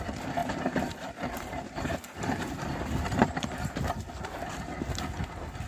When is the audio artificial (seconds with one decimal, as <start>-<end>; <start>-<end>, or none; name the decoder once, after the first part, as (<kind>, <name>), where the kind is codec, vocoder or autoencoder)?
0.4-3.8 (vocoder, BigVGAN v2)